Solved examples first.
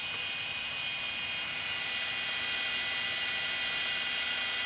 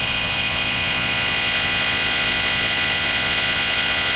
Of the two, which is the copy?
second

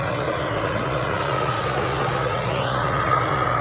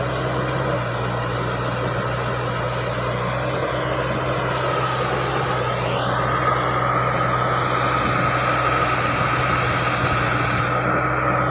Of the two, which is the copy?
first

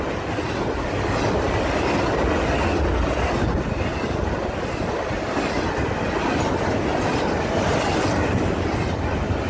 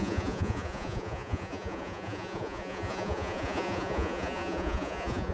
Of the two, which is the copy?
second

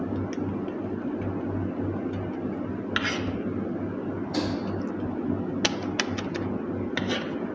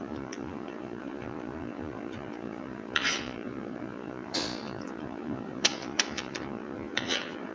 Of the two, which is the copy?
second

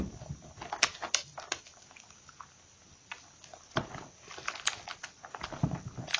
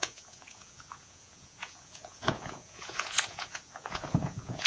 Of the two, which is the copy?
second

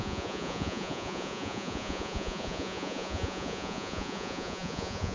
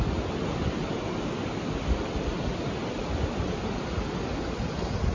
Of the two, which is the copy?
first